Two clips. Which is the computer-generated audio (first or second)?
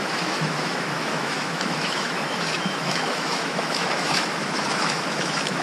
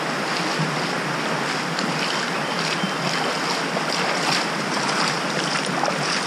first